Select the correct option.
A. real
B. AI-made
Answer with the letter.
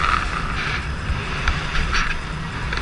A